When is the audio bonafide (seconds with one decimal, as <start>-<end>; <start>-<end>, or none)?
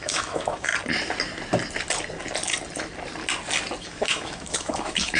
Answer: 0.7-3.8